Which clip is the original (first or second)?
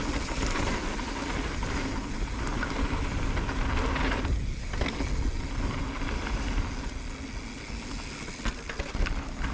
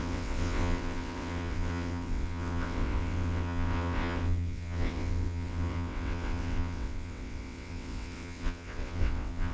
first